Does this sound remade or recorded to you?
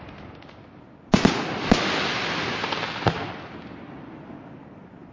recorded